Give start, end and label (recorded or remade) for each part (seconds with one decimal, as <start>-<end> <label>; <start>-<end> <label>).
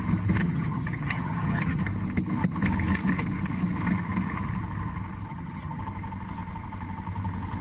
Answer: 0.0-0.4 recorded; 0.4-1.8 remade; 1.8-5.3 recorded; 5.3-5.8 remade; 5.8-7.6 recorded